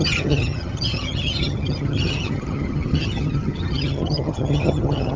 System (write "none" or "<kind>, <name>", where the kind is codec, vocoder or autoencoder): vocoder, HiFi-GAN